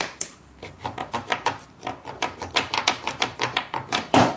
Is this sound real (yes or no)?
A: no